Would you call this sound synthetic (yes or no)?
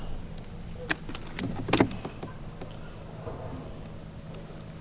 no